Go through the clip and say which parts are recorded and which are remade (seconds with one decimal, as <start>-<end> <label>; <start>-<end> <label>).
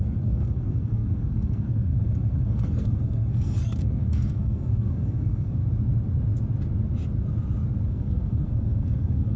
0.0-5.6 remade; 5.6-7.9 recorded; 7.9-9.4 remade